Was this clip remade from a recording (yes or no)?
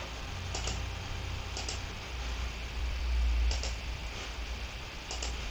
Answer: yes